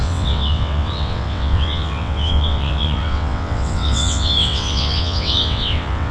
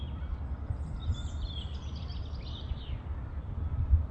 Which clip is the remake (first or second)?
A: first